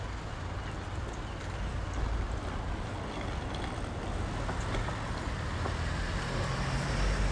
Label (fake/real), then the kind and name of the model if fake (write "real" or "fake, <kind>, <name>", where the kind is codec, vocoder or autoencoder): real